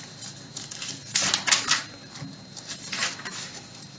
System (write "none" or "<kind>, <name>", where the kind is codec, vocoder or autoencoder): none